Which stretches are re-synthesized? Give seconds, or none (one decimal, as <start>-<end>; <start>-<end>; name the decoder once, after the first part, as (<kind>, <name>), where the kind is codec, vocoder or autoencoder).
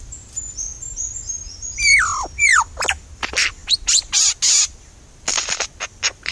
none